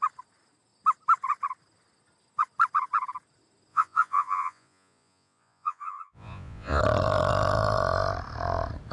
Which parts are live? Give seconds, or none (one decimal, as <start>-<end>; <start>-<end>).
0.0-3.7; 6.8-8.9